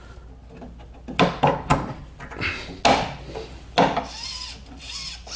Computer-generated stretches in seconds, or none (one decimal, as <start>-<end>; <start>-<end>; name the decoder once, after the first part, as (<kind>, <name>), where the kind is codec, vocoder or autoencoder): none